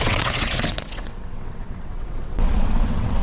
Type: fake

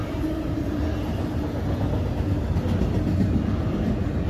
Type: real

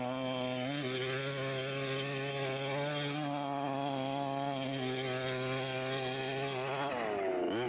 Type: real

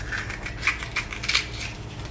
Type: real